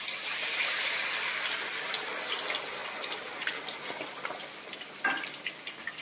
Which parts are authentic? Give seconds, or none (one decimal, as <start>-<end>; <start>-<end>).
0.0-6.0

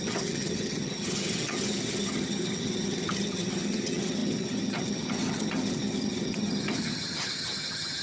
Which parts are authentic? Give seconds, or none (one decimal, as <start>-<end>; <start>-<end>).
none

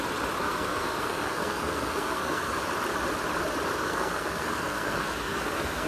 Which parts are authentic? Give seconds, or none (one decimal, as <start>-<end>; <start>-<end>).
0.0-0.4; 2.6-3.8